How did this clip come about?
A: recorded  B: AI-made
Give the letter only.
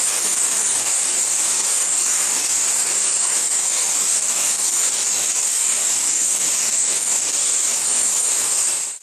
B